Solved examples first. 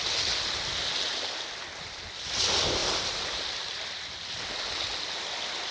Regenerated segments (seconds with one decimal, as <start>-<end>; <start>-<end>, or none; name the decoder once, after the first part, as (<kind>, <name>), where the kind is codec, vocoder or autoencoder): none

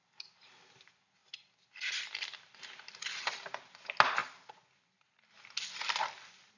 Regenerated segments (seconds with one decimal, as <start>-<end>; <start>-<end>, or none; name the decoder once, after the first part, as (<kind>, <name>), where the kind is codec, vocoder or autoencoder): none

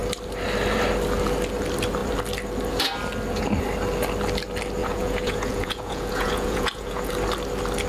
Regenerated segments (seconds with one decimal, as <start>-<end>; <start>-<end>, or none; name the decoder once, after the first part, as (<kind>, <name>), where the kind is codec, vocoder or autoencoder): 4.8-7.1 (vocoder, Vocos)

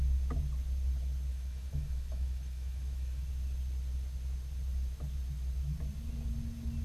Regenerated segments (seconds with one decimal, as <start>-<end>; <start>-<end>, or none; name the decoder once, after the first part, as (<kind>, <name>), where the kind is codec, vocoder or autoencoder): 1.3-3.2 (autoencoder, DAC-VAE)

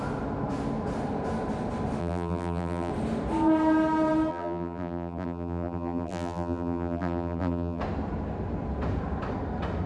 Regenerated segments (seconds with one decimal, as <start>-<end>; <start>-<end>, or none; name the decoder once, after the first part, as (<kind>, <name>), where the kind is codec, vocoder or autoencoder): 2.0-2.9 (vocoder, BigVGAN v2); 4.3-7.8

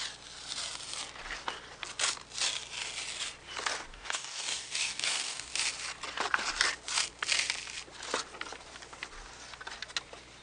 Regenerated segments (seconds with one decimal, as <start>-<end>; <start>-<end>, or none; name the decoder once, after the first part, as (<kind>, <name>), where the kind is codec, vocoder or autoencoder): 3.9-5.5 (codec, DAC)